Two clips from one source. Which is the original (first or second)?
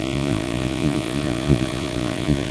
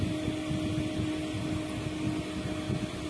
second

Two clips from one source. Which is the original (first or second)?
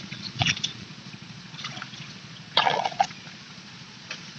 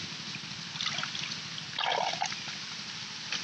second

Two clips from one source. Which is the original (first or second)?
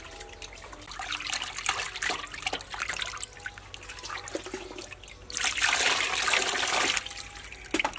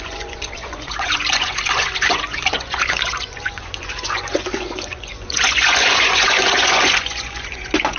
first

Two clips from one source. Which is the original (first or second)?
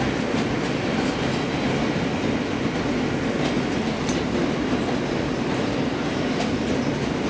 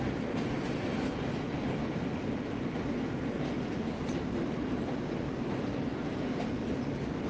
first